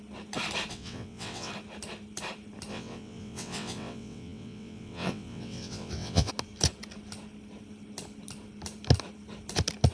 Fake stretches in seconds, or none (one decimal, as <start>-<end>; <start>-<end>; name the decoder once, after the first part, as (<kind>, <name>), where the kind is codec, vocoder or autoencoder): 0.7-1.5 (vocoder, WaveNeXt); 2.7-6.3